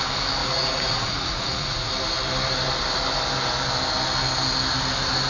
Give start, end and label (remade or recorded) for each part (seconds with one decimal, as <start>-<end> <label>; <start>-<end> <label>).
0.0-0.4 recorded; 0.4-1.9 remade; 1.9-5.3 recorded